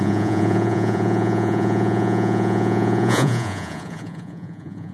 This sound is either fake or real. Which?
fake